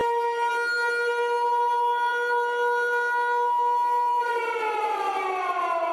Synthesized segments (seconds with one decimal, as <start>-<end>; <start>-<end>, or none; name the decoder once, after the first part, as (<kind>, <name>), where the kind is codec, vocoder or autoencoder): none